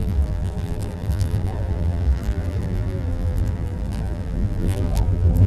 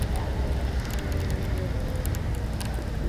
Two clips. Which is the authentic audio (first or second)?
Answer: second